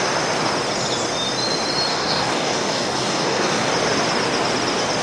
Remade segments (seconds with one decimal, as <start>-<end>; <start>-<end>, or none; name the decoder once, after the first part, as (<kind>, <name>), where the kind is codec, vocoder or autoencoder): 1.9-3.7 (codec, DAC)